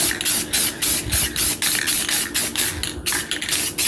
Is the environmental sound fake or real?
real